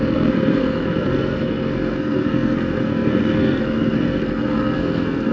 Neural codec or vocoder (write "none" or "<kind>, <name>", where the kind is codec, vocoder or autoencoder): codec, SNAC